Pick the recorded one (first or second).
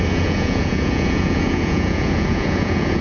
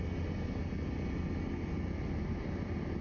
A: second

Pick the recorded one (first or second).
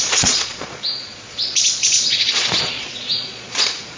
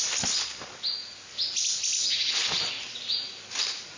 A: second